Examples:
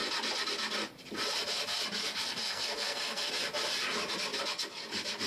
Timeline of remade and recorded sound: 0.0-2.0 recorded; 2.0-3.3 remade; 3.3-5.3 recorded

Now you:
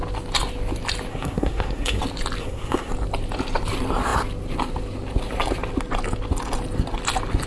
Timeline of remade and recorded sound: 0.0-1.1 recorded; 1.1-2.0 remade; 2.0-2.4 recorded; 2.4-2.9 remade; 2.9-7.5 recorded

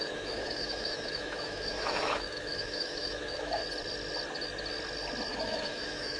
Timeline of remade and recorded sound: 0.0-3.6 remade; 3.6-5.3 recorded; 5.3-6.2 remade

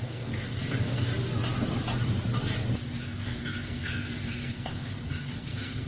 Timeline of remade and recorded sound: 0.0-1.1 remade; 1.1-3.0 recorded; 3.0-5.9 remade

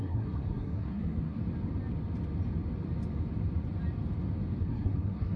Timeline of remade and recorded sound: 0.0-1.4 remade; 1.4-4.6 recorded; 4.6-5.4 remade